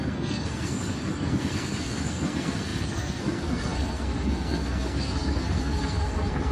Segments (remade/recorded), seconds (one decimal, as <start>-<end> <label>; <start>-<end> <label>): 0.0-6.5 remade